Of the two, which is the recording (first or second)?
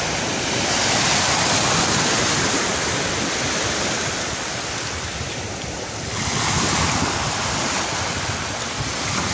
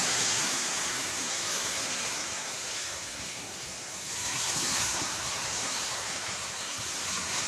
first